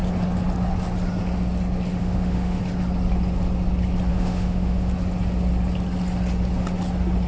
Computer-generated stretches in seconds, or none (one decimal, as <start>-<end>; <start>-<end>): 2.0-2.6; 4.1-4.9

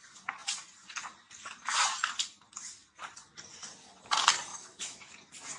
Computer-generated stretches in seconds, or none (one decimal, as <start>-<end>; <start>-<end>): 4.5-5.1

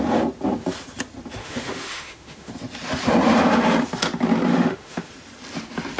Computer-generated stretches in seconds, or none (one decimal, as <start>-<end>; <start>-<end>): 1.4-2.5; 4.5-5.1

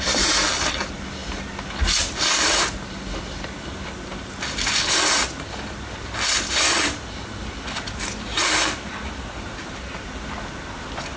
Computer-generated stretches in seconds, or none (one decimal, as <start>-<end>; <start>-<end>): none

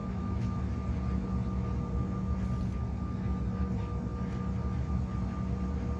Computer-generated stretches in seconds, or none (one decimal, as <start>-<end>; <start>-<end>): 0.0-0.6